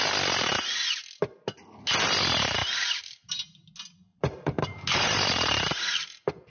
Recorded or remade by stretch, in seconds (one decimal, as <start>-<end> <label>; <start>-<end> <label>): 0.0-2.6 recorded; 2.6-3.3 remade; 3.3-4.1 recorded; 4.1-6.5 remade